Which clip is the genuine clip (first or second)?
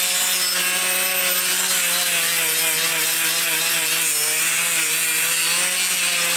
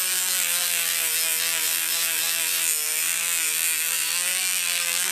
first